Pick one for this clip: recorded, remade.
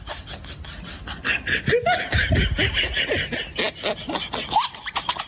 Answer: recorded